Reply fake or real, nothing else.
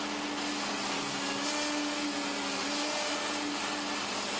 real